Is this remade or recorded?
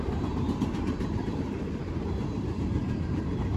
remade